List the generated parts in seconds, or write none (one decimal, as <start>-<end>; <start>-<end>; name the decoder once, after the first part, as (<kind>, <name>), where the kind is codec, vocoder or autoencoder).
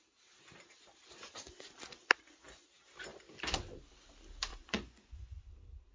4.5-5.4 (vocoder, Vocos)